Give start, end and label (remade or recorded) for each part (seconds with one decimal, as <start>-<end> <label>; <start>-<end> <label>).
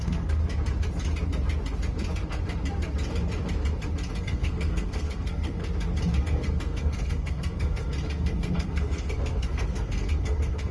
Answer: 0.0-0.4 remade; 0.4-4.2 recorded; 4.2-5.6 remade; 5.6-6.2 recorded; 6.2-10.7 remade